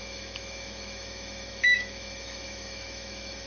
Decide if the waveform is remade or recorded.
remade